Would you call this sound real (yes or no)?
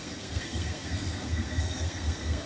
no